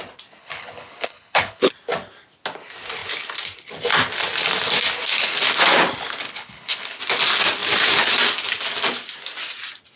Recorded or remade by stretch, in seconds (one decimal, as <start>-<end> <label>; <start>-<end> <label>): 0.0-0.4 recorded; 0.4-1.7 remade; 1.7-6.3 recorded; 6.3-7.0 remade; 7.0-10.0 recorded